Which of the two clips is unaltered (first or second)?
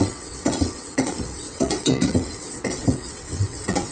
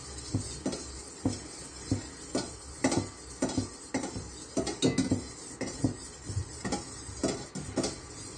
second